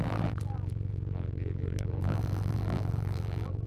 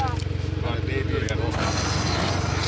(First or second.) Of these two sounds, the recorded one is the second